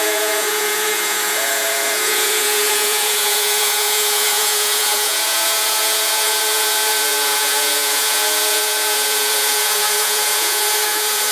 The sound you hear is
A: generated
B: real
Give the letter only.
A